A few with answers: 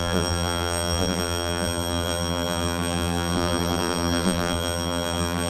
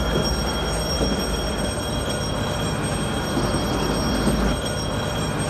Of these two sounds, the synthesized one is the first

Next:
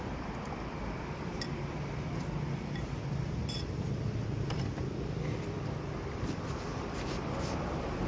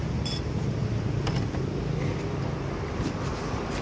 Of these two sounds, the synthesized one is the first